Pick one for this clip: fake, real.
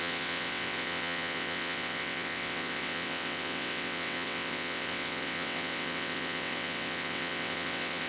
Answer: fake